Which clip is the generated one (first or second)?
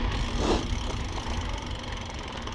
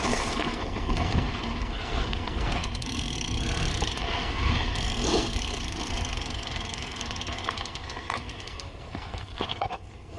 second